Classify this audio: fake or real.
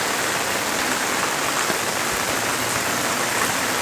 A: fake